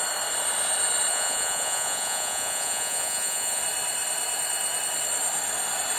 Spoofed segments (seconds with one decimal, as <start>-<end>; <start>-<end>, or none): 1.1-3.6